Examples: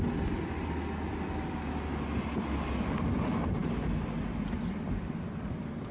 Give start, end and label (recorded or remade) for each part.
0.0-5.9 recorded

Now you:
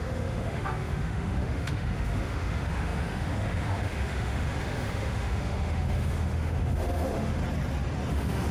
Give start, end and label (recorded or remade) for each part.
0.0-7.4 remade; 7.4-8.1 recorded; 8.1-8.5 remade

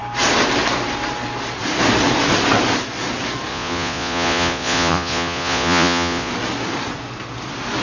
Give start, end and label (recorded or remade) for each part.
0.0-3.5 recorded; 3.5-6.3 remade; 6.3-7.8 recorded

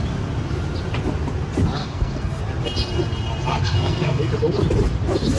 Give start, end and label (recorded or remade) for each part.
0.0-1.8 recorded; 1.8-2.4 remade; 2.4-3.5 recorded; 3.5-4.3 remade; 4.3-5.4 recorded

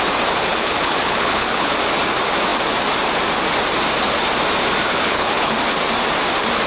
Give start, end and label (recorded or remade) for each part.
0.0-0.5 recorded; 0.5-1.7 remade; 1.7-4.9 recorded; 4.9-5.5 remade; 5.5-6.7 recorded

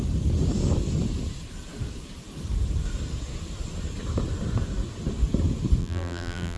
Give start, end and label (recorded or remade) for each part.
0.0-5.8 recorded; 5.8-6.6 remade

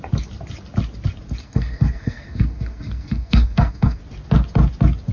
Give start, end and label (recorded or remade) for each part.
0.0-1.4 recorded; 1.4-4.0 remade; 4.0-5.1 recorded

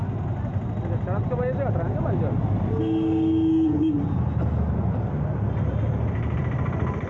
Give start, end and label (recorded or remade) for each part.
0.0-7.1 recorded